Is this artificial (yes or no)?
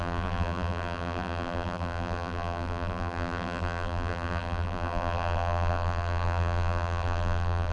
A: yes